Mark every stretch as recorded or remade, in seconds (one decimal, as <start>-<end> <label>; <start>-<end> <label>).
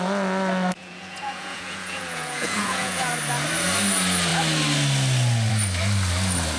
0.0-0.8 recorded; 0.8-3.1 remade; 3.1-6.6 recorded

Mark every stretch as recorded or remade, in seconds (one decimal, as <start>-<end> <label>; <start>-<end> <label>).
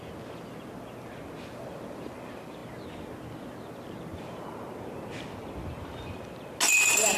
0.0-7.2 recorded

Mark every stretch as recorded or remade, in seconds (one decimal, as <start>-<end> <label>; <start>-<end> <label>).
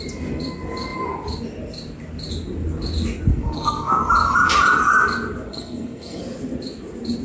0.0-3.3 recorded; 3.3-4.0 remade; 4.0-5.5 recorded; 5.5-6.2 remade; 6.2-7.2 recorded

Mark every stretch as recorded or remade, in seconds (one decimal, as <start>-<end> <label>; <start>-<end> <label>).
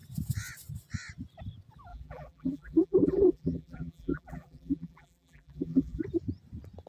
0.0-1.9 recorded; 1.9-6.0 remade; 6.0-6.9 recorded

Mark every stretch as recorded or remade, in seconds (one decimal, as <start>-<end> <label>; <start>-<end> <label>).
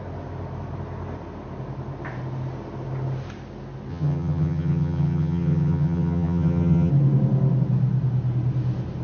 0.0-3.9 recorded; 3.9-6.9 remade; 6.9-9.0 recorded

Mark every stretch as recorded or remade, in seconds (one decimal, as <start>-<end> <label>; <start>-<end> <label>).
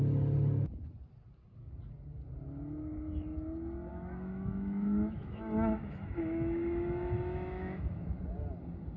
0.0-3.9 recorded; 3.9-8.2 remade; 8.2-9.0 recorded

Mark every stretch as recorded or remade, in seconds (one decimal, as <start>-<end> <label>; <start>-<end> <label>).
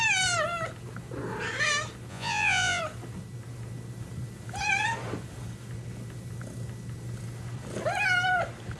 0.0-2.1 recorded; 2.1-2.8 remade; 2.8-8.8 recorded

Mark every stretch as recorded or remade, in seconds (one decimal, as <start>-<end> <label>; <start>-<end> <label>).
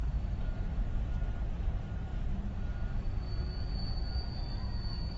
0.0-0.9 remade; 0.9-5.2 recorded